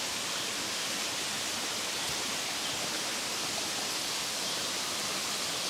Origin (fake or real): real